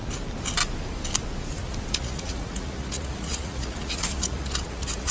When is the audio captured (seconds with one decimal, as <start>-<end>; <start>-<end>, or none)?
0.0-1.9